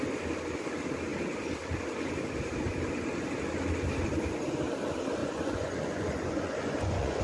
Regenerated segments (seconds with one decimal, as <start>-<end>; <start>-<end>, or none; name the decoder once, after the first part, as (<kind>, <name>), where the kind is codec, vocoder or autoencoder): 5.2-7.2 (vocoder, Vocos)